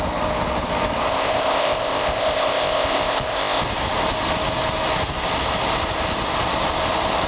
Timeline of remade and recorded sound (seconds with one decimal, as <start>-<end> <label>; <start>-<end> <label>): 0.0-1.0 recorded; 1.0-3.6 remade; 3.6-7.3 recorded